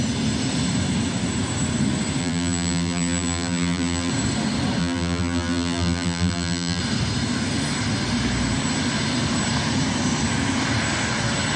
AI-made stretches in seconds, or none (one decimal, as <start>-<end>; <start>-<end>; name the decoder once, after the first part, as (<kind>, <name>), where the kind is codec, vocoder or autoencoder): 2.2-4.1 (vocoder, BigVGAN v2); 4.8-6.8